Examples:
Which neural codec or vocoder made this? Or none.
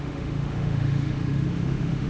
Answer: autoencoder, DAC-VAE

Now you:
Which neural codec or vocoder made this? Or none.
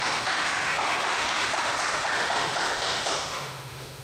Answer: autoencoder, DAC-VAE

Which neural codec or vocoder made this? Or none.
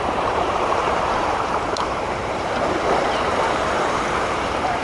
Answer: vocoder, BigVGAN v2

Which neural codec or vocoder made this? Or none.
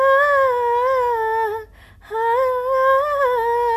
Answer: none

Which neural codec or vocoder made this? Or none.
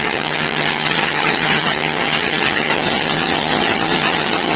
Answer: vocoder, HiFi-GAN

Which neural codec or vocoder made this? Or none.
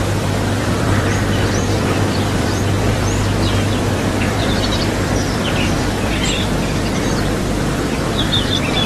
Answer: vocoder, BigVGAN v2